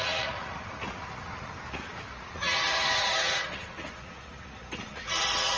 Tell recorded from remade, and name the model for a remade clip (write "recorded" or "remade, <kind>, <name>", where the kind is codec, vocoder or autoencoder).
remade, vocoder, Vocos